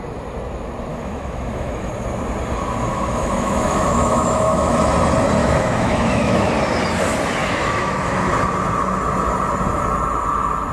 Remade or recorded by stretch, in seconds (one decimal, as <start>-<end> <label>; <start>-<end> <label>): 0.0-0.9 recorded; 0.9-1.9 remade; 1.9-2.9 recorded; 2.9-4.8 remade; 4.8-5.4 recorded; 5.4-6.5 remade; 6.5-7.4 recorded; 7.4-8.3 remade; 8.3-10.7 recorded